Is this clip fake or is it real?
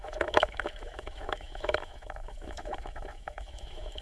fake